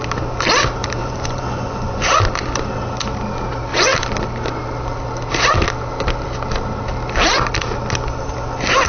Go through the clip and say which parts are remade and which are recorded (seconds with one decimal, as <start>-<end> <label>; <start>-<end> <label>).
0.0-1.0 recorded; 1.0-2.2 remade; 2.2-8.9 recorded